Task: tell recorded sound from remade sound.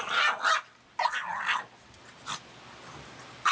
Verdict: recorded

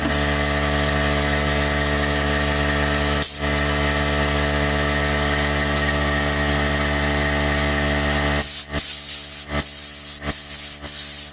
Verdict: recorded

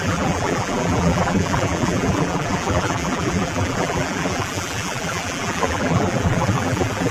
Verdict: remade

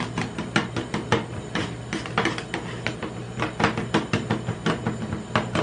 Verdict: recorded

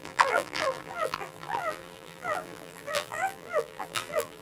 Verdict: remade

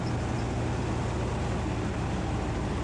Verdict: recorded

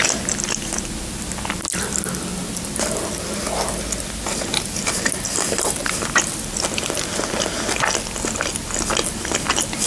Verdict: recorded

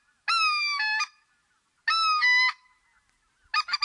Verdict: recorded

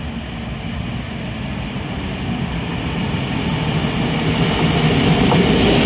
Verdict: recorded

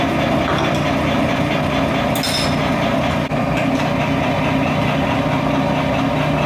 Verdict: recorded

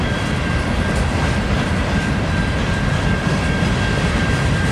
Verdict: remade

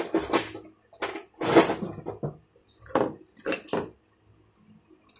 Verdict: recorded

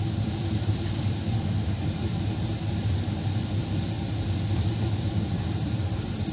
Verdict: remade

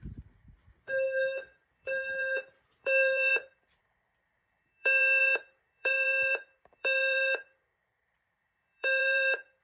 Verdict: remade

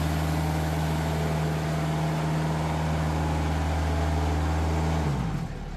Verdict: recorded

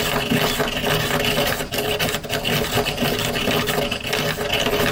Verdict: recorded